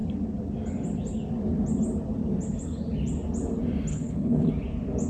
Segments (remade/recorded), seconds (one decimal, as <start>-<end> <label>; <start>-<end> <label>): 0.0-3.9 recorded; 3.9-4.5 remade; 4.5-5.1 recorded